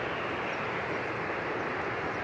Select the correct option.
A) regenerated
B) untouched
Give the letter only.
B